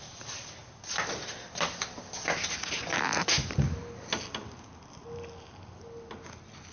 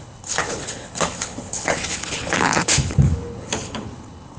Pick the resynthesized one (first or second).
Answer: second